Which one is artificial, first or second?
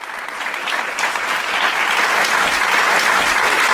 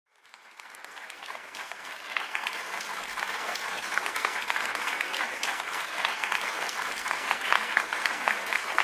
second